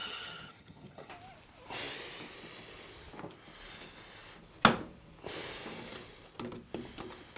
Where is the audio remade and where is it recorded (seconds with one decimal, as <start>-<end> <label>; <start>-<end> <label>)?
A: 0.0-1.1 remade; 1.1-7.4 recorded